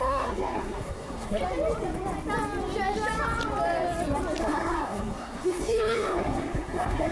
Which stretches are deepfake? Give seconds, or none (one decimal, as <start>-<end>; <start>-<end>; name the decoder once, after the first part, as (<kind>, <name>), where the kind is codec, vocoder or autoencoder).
0.0-1.4 (codec, SNAC); 4.4-7.1